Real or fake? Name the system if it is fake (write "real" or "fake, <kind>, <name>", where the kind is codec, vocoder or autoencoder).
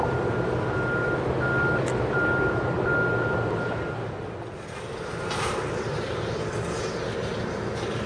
real